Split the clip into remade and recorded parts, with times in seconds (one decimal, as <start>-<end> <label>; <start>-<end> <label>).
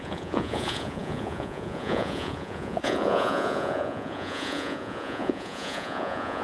0.0-6.4 remade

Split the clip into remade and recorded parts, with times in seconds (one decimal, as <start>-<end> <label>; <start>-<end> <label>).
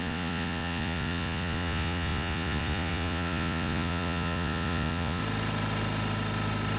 0.0-5.2 remade; 5.2-6.8 recorded